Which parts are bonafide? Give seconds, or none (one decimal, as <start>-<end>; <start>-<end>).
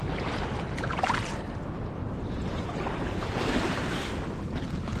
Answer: 0.0-5.0